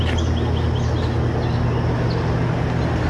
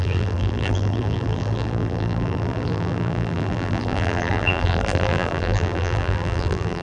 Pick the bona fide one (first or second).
first